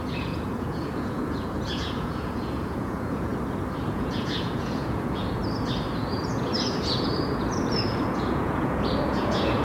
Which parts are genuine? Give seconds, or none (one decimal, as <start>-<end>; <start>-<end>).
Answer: 3.3-3.9; 5.4-6.0